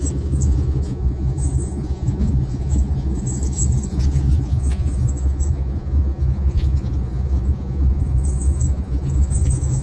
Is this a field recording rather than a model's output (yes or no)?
no